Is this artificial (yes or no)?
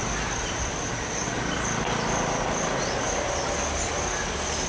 no